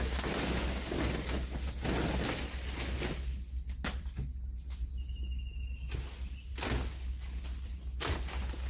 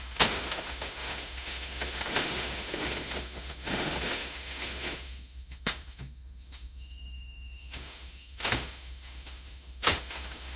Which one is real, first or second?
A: first